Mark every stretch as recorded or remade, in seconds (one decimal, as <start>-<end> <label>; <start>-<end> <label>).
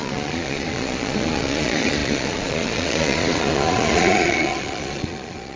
0.0-5.6 remade